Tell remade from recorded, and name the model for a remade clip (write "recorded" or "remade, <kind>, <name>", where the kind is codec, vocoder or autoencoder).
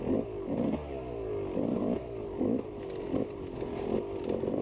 recorded